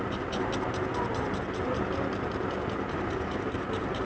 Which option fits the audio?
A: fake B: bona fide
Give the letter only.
B